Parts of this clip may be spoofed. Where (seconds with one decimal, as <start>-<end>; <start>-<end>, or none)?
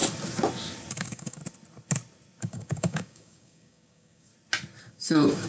0.9-1.4; 2.4-4.3; 4.8-5.5